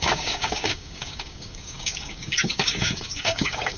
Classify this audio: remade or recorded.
remade